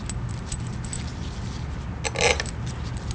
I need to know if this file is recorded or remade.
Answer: recorded